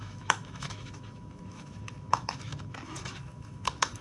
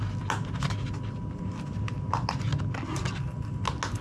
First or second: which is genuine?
second